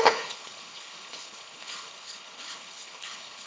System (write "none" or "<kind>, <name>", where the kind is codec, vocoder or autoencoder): codec, HILCodec